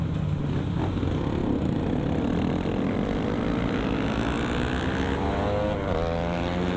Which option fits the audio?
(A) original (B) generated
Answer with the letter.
A